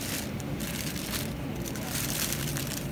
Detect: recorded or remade remade